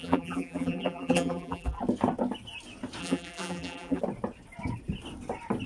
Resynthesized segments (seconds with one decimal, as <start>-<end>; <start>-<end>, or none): 0.0-1.8; 3.0-4.0